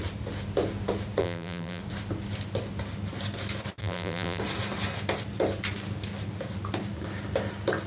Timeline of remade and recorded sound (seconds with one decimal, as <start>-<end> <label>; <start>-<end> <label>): 0.0-1.2 recorded; 1.2-1.8 remade; 1.8-3.8 recorded; 3.8-4.4 remade; 4.4-7.9 recorded